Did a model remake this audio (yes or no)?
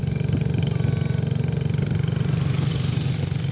no